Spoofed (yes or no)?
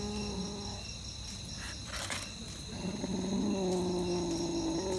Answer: no